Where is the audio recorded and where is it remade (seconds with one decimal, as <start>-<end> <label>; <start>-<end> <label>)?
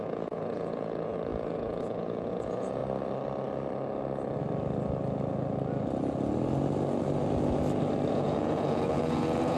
0.0-2.8 remade; 2.8-8.1 recorded; 8.1-9.6 remade